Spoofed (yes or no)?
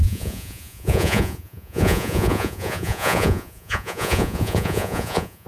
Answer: yes